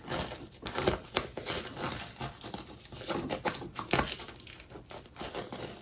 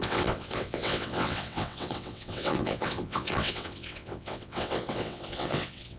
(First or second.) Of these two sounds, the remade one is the second